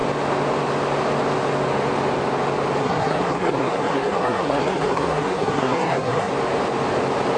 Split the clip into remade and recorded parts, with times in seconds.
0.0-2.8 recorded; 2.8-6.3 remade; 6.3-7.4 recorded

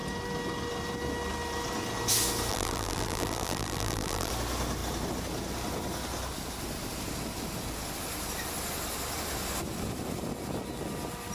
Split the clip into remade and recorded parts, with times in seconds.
0.0-2.5 recorded; 2.5-4.3 remade; 4.3-11.3 recorded